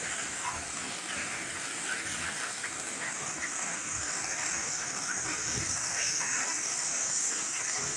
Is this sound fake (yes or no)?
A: yes